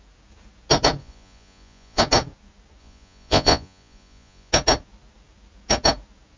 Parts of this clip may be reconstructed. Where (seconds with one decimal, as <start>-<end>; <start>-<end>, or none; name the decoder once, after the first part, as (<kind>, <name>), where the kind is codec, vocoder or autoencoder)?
1.0-2.0 (vocoder, Vocos); 2.8-4.5